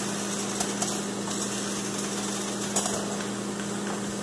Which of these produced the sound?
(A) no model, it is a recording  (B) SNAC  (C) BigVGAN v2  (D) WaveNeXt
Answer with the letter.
A